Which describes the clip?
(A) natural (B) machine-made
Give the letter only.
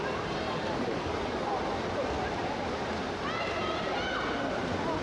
A